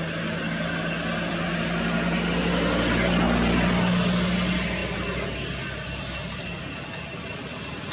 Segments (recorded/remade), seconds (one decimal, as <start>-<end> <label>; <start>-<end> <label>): 0.0-7.9 recorded